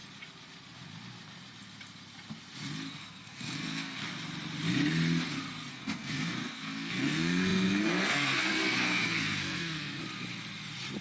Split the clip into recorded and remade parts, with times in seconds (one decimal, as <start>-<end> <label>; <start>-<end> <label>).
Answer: 0.0-2.9 recorded; 2.9-4.0 remade; 4.0-5.7 recorded; 5.7-10.0 remade; 10.0-11.0 recorded